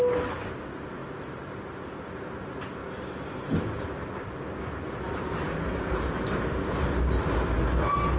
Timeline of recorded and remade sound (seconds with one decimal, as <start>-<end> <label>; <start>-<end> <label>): 0.0-8.2 recorded